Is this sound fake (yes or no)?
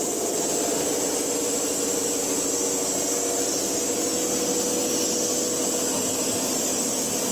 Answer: no